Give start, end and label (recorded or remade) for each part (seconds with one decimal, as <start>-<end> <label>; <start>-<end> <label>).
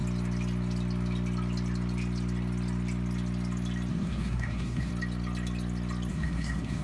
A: 0.0-3.9 recorded; 3.9-4.9 remade; 4.9-6.1 recorded; 6.1-6.8 remade